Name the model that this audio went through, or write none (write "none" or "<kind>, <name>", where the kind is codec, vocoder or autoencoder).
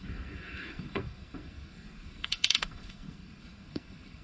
codec, SNAC